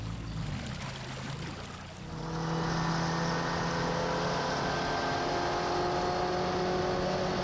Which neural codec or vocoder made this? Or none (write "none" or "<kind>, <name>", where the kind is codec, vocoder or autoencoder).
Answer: none